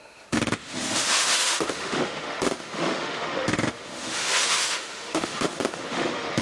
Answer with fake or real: fake